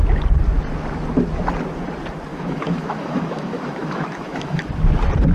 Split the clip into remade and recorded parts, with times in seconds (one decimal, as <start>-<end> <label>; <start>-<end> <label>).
0.0-2.3 recorded; 2.3-4.7 remade; 4.7-5.3 recorded